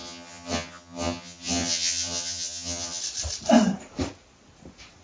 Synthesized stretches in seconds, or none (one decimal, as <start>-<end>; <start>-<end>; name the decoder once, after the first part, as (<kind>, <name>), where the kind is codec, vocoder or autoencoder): 0.0-3.0 (vocoder, HiFi-GAN)